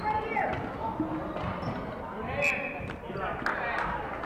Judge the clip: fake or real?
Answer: real